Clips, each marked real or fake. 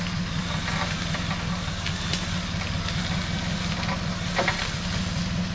real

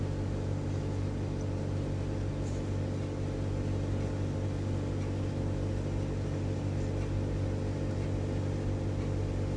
real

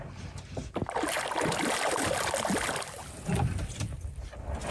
real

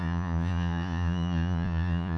fake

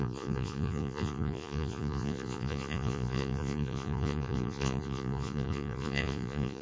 fake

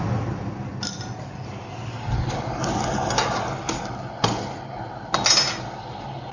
real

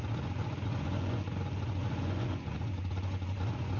fake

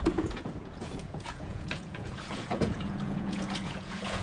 fake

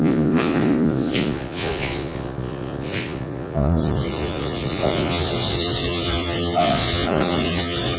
fake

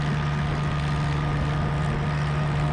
real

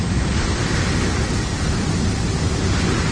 real